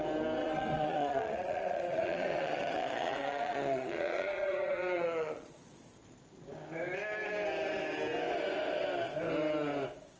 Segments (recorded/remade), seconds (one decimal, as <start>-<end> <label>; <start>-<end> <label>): 0.0-0.4 recorded; 0.4-5.6 remade; 5.6-10.2 recorded